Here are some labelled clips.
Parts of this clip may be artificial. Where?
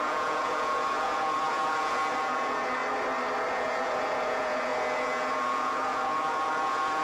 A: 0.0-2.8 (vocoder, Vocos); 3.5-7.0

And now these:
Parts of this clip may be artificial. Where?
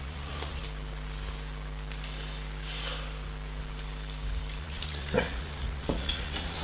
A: 0.0-0.6 (vocoder, Vocos); 4.6-6.6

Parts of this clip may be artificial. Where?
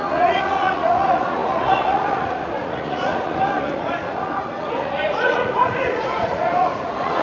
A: 0.0-7.2 (vocoder, Vocos)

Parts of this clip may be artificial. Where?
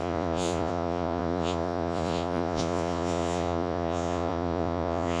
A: 0.0-5.2 (vocoder, Vocos)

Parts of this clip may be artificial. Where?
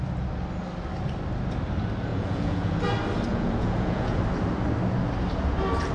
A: 2.1-2.8 (vocoder, Vocos); 3.3-4.2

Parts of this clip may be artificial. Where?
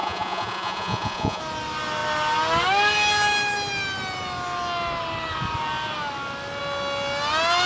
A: 0.0-1.4 (vocoder, Vocos)